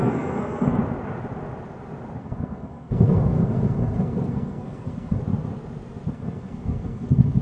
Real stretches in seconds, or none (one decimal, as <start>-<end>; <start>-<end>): 0.8-2.2; 5.2-6.1